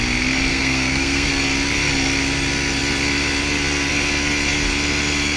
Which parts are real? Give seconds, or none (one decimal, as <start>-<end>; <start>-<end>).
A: 0.0-0.5; 1.3-5.4